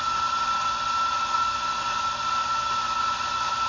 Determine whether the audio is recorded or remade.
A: recorded